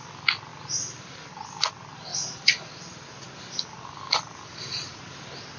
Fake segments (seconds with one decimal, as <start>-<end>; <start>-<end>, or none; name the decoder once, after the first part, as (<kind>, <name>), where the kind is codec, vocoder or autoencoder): 0.5-1.3 (vocoder, BigVGAN v2); 2.1-5.6